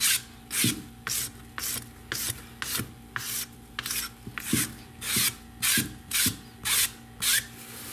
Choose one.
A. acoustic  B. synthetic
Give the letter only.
A